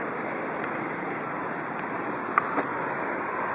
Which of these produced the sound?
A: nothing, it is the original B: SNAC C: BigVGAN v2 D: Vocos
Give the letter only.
C